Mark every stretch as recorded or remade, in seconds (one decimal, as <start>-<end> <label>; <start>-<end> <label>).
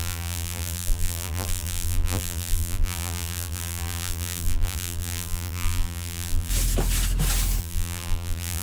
0.0-6.5 remade; 6.5-7.6 recorded; 7.6-8.6 remade